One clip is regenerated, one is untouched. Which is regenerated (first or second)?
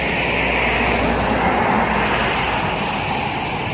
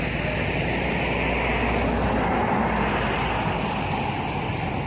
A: second